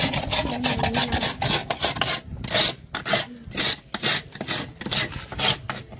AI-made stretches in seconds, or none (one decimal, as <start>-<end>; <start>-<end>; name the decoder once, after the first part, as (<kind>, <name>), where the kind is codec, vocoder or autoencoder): none